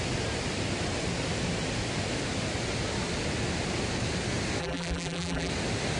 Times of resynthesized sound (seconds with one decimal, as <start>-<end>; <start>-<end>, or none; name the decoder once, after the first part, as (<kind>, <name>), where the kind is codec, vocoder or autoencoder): 4.6-5.5 (vocoder, BigVGAN v2)